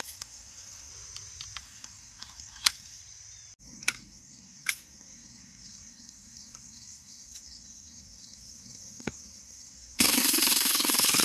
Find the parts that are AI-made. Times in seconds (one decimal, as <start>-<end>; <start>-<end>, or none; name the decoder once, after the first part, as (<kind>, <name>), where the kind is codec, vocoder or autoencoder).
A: 0.0-0.9 (codec, SNAC); 1.6-3.0; 3.6-11.2

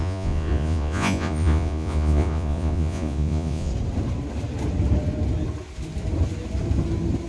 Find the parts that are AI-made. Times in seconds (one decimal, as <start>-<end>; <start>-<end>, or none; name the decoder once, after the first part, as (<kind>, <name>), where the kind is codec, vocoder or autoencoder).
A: 0.0-3.7 (vocoder, Vocos)

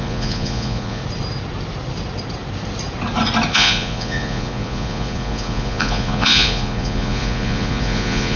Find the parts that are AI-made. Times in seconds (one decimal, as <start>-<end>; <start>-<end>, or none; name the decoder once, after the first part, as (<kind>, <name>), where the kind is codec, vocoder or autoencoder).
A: 0.0-1.0 (vocoder, Vocos); 3.5-8.4

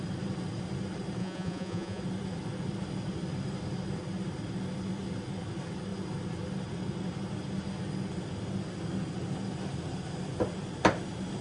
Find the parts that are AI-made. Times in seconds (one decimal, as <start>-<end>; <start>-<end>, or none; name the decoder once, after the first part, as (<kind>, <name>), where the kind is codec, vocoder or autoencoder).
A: 1.2-2.0 (vocoder, Vocos)

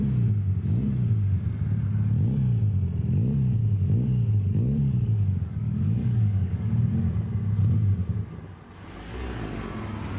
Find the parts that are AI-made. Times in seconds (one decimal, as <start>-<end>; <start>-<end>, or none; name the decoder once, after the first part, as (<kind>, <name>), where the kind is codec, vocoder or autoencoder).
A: 3.6-6.9 (codec, DAC)